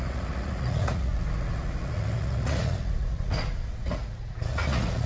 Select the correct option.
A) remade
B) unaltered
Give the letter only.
A